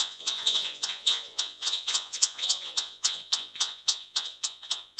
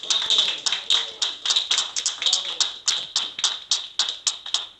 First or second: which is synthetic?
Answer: first